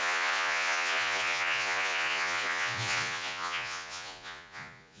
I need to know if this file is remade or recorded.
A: remade